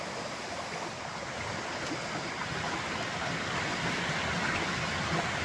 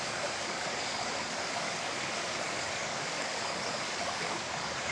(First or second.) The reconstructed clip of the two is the second